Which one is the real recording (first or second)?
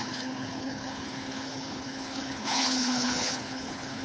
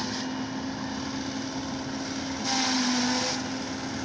second